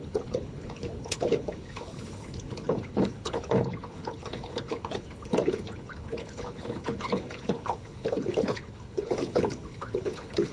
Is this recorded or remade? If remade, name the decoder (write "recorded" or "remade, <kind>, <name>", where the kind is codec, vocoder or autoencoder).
remade, codec, HILCodec